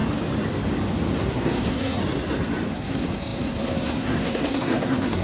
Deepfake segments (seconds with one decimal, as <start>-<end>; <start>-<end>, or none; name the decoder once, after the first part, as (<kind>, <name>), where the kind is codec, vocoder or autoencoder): 1.2-2.0 (codec, SNAC); 2.7-5.2